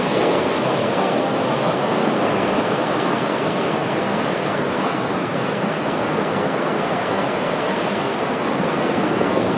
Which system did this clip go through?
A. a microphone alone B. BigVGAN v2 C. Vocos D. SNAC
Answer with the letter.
D